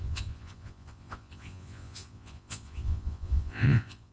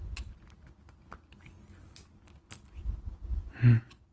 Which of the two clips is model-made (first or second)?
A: first